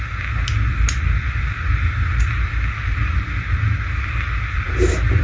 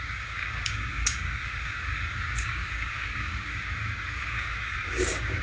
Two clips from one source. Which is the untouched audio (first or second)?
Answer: first